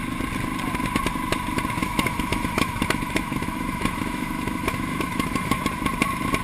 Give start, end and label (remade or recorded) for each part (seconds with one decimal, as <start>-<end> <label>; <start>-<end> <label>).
0.0-1.8 recorded; 1.8-5.6 remade; 5.6-6.4 recorded